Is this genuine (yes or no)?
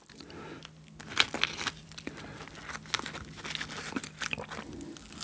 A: yes